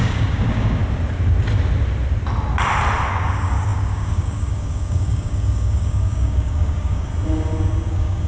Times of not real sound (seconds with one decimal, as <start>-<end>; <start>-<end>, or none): 0.0-0.8; 3.1-7.1; 7.9-8.3